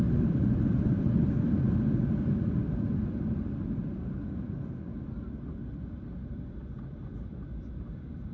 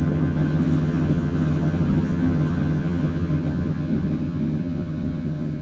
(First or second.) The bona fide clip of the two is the first